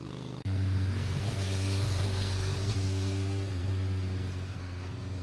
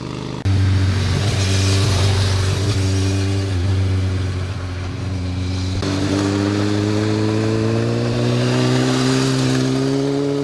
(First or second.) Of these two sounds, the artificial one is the first